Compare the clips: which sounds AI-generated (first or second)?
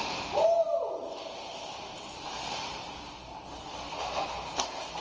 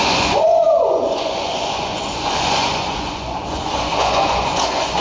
second